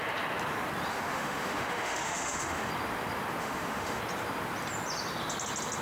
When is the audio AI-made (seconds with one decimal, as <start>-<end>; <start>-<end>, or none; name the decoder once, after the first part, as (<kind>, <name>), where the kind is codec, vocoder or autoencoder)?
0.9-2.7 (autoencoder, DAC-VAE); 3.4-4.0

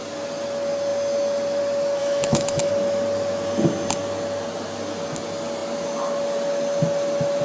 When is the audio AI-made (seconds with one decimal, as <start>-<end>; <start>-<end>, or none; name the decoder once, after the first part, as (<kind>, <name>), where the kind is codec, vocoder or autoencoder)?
2.0-2.7 (autoencoder, DAC-VAE)

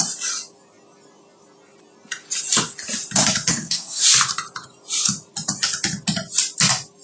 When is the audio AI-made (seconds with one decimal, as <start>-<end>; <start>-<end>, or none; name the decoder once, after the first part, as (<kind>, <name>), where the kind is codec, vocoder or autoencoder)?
3.5-4.0 (codec, SNAC)